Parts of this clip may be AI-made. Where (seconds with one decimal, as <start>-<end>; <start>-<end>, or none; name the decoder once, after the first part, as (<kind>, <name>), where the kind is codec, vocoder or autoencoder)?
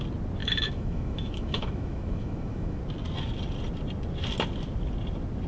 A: 0.4-2.8 (autoencoder, DAC-VAE)